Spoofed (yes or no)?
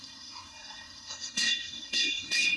yes